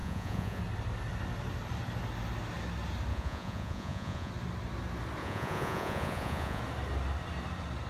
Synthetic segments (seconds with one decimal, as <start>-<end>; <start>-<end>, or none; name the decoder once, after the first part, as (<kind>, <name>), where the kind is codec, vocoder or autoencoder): 0.0-0.6 (vocoder, Vocos); 3.1-4.3; 5.2-6.6